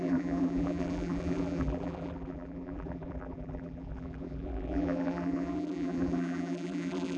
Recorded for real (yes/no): no